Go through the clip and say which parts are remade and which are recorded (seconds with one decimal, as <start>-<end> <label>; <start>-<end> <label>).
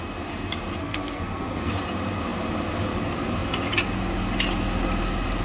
0.0-0.8 recorded; 0.8-1.7 remade; 1.7-5.4 recorded